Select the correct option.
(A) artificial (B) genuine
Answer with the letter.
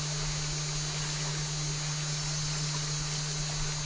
B